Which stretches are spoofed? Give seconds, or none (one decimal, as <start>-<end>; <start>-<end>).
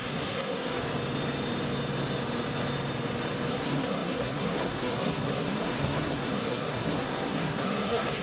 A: 0.0-0.8; 3.5-8.2